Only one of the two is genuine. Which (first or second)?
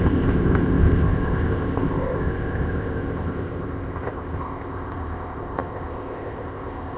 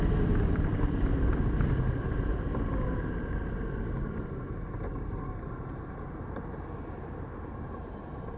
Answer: second